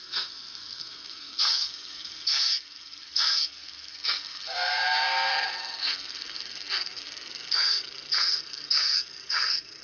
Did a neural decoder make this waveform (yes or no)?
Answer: yes